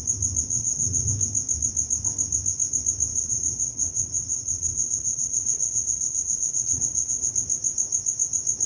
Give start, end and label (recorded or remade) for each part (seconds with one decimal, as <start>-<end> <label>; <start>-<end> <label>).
0.0-0.5 recorded; 0.5-1.1 remade; 1.1-3.1 recorded; 3.1-7.3 remade; 7.3-8.7 recorded